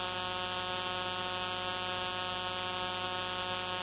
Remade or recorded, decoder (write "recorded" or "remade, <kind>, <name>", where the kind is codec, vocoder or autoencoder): recorded